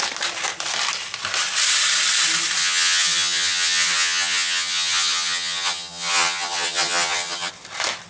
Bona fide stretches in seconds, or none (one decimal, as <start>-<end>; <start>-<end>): 0.0-2.6; 7.5-8.1